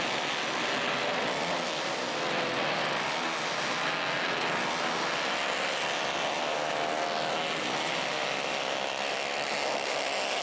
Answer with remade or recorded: recorded